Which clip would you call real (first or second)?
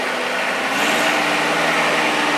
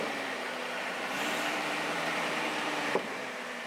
first